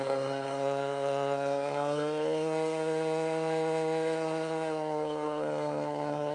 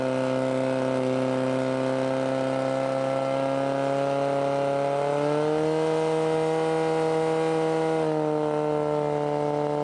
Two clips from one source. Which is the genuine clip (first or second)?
second